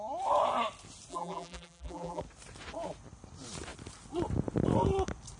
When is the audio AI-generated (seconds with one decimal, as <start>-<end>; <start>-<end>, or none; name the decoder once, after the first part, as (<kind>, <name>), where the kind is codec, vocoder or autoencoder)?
1.1-2.2 (vocoder, BigVGAN v2)